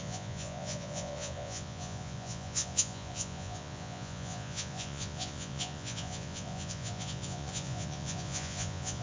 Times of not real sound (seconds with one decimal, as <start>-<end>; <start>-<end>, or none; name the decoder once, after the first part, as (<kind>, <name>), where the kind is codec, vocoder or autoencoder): 0.0-9.0 (vocoder, Vocos)